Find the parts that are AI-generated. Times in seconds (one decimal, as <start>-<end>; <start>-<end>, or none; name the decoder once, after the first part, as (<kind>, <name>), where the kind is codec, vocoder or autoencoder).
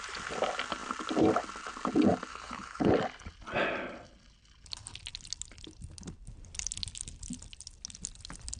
2.3-2.9 (codec, HILCodec)